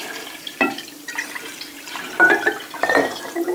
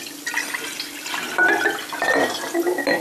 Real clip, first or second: second